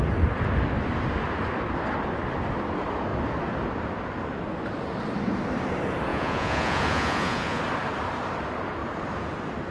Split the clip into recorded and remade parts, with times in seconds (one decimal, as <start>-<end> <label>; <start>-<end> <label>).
0.0-6.1 recorded; 6.1-7.6 remade; 7.6-9.7 recorded